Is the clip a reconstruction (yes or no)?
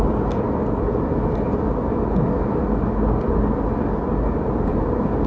no